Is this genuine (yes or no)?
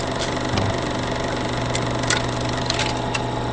yes